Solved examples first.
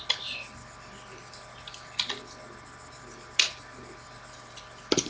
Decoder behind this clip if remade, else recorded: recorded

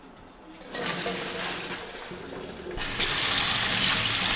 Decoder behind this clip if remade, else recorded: recorded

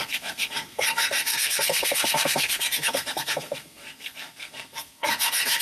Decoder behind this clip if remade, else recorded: remade, codec, SNAC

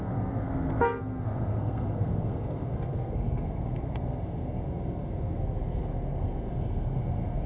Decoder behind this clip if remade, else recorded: remade, codec, SNAC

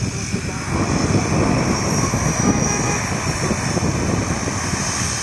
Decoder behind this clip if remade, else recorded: recorded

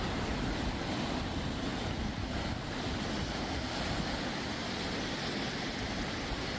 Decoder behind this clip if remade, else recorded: recorded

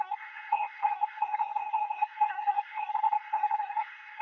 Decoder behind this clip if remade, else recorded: remade, codec, SNAC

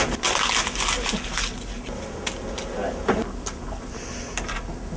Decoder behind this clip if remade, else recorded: recorded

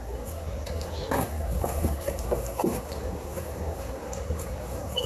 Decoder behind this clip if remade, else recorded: remade, codec, SNAC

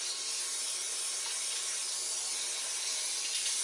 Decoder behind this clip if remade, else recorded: recorded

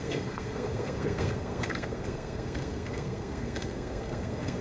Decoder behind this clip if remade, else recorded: remade, codec, SNAC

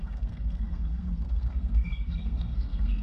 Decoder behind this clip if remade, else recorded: remade, codec, SNAC